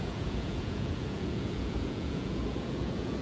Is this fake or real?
fake